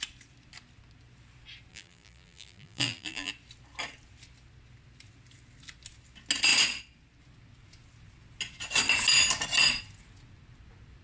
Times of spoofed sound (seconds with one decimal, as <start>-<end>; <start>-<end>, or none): 1.7-3.3